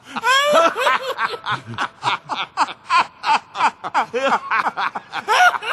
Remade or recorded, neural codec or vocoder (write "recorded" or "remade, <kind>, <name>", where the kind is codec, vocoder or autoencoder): recorded